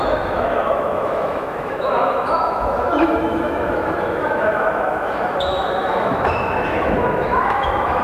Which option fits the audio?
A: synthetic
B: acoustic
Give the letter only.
A